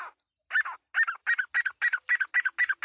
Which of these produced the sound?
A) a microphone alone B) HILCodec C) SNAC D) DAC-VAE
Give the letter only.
A